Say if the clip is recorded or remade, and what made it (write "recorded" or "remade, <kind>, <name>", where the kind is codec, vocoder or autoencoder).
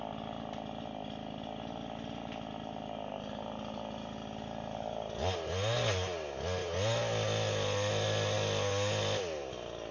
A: recorded